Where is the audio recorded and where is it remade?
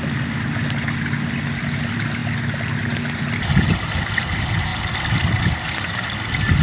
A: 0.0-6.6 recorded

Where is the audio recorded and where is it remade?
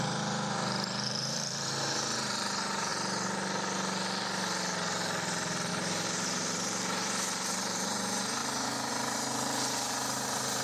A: 0.0-2.9 remade; 2.9-5.7 recorded; 5.7-10.6 remade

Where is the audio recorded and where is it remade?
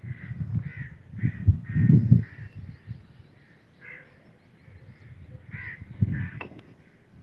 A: 0.0-0.5 remade; 0.5-1.2 recorded; 1.2-2.3 remade; 2.3-5.8 recorded; 5.8-7.2 remade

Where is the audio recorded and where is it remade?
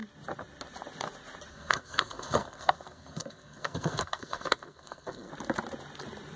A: 0.0-1.5 recorded; 1.5-5.3 remade; 5.3-6.4 recorded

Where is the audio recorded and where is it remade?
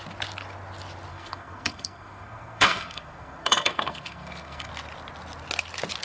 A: 0.0-1.1 recorded; 1.1-4.7 remade; 4.7-6.0 recorded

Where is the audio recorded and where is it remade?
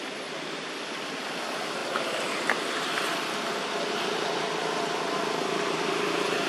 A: 0.0-6.5 recorded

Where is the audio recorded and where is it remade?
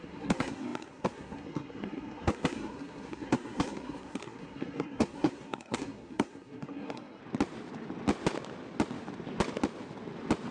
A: 0.0-7.2 remade; 7.2-10.5 recorded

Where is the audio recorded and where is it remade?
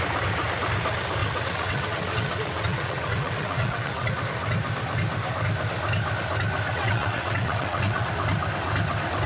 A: 0.0-1.2 recorded; 1.2-4.1 remade; 4.1-6.7 recorded; 6.7-8.1 remade; 8.1-9.3 recorded